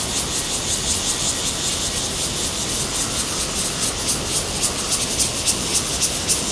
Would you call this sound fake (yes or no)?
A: no